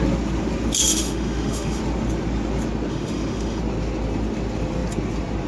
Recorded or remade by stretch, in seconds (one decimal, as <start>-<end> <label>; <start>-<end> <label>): 0.0-0.8 recorded; 0.8-1.8 remade; 1.8-2.9 recorded; 2.9-3.6 remade; 3.6-5.5 recorded